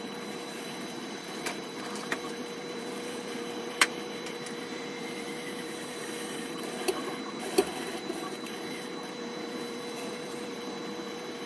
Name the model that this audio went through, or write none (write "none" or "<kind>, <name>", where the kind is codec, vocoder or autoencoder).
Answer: vocoder, BigVGAN v2